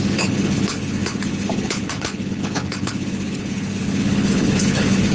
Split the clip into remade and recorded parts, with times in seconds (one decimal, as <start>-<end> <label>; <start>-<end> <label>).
0.0-5.1 remade